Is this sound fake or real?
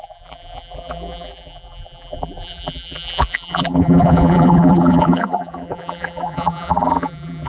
fake